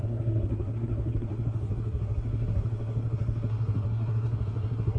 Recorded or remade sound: remade